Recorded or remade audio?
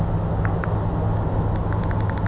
recorded